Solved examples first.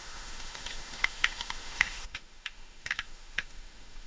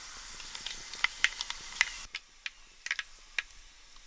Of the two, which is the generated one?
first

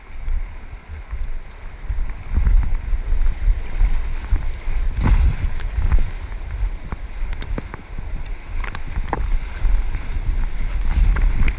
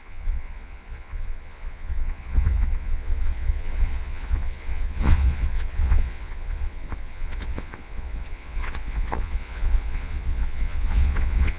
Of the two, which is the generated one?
second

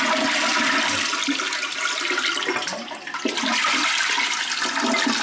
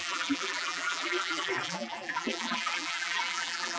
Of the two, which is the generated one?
second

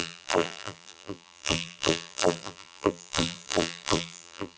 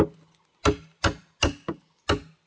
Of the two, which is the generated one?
first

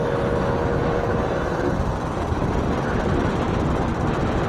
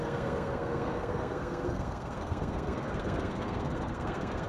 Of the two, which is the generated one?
second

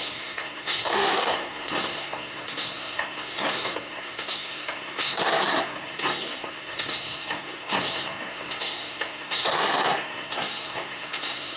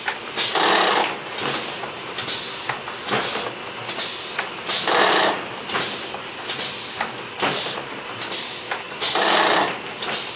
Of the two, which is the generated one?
first